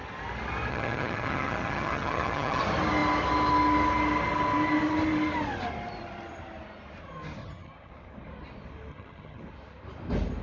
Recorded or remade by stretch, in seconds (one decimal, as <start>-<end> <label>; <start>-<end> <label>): 0.0-0.7 recorded; 0.7-2.6 remade; 2.6-7.4 recorded; 7.4-7.9 remade; 7.9-8.9 recorded; 8.9-9.4 remade; 9.4-10.4 recorded